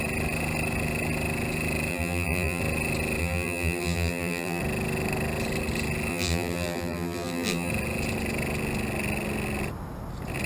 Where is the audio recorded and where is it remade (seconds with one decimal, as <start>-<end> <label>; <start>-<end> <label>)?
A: 0.0-1.9 recorded; 1.9-2.6 remade; 2.6-3.2 recorded; 3.2-4.6 remade; 4.6-6.1 recorded; 6.1-7.7 remade; 7.7-10.5 recorded